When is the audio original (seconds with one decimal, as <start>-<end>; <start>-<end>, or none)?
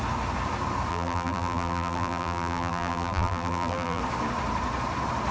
0.0-0.9; 4.0-5.3